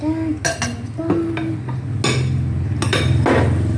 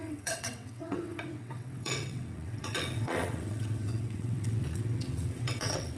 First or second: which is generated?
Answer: second